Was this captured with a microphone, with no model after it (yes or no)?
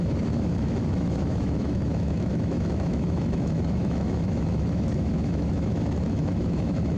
no